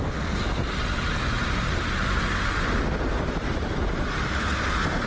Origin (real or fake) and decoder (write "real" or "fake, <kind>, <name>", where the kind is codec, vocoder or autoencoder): real